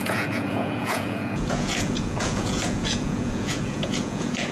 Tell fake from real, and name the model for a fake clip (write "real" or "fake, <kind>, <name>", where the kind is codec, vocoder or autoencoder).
fake, vocoder, Vocos